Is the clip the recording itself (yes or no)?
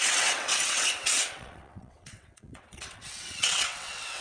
no